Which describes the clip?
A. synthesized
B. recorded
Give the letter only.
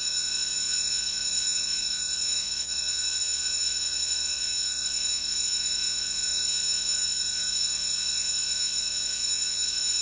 A